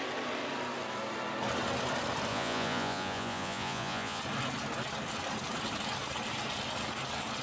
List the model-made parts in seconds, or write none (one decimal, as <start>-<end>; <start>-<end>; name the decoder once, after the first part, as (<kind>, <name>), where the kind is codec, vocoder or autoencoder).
2.3-4.2 (vocoder, Vocos)